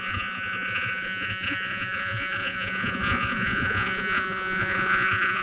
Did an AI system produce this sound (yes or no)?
yes